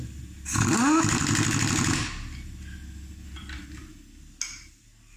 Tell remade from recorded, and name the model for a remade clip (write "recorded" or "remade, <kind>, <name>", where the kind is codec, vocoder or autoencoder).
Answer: recorded